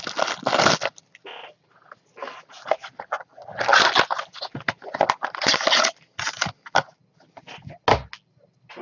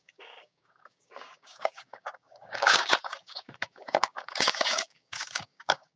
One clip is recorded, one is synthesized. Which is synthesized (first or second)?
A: second